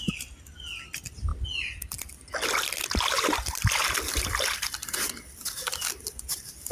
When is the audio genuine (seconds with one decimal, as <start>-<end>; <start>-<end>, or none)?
0.0-6.7